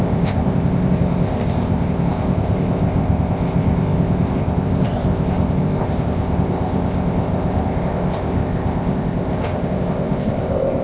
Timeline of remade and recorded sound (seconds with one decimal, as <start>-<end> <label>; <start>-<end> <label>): 0.0-10.8 remade